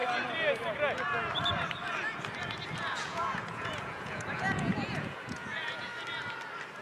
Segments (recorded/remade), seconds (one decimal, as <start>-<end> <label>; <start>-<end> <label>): 0.0-2.8 recorded; 2.8-5.9 remade; 5.9-6.8 recorded